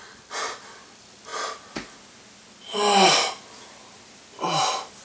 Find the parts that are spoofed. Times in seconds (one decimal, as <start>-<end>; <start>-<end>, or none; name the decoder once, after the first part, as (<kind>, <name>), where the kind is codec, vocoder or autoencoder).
none